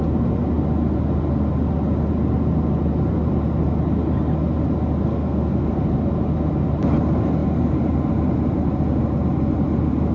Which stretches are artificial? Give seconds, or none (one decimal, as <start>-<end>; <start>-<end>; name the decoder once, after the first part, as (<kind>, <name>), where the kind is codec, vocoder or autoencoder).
5.1-5.7 (codec, SNAC)